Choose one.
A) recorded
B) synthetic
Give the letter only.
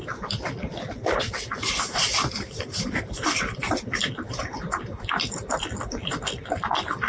B